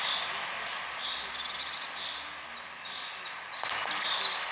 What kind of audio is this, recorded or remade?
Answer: recorded